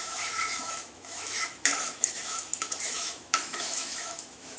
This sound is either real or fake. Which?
fake